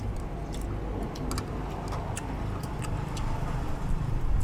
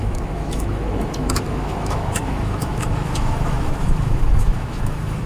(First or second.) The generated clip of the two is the second